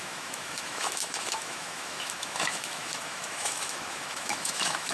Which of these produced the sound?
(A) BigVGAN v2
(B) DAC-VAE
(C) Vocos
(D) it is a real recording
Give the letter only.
B